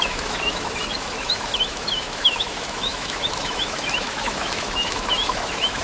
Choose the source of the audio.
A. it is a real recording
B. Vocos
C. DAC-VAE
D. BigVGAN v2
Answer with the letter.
C